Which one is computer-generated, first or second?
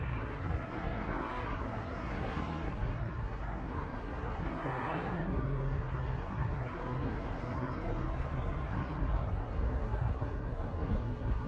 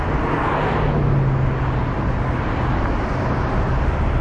first